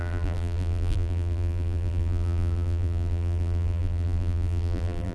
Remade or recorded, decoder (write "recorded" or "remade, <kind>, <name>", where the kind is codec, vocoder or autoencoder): remade, vocoder, BigVGAN v2